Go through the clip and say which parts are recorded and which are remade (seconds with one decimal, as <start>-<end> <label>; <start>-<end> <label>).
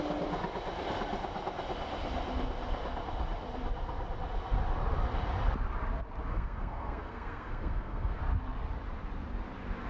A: 0.0-6.3 recorded; 6.3-8.2 remade; 8.2-9.9 recorded